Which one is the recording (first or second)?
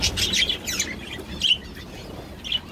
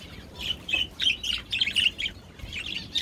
first